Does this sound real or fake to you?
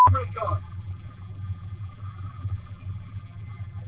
fake